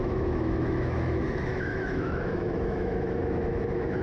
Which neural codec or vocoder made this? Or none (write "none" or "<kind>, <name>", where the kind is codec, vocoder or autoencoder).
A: autoencoder, DAC-VAE